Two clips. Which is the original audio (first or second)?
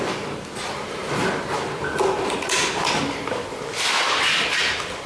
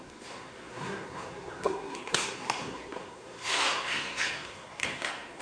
first